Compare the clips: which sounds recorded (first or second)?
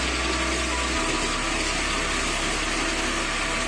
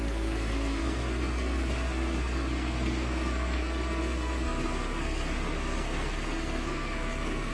first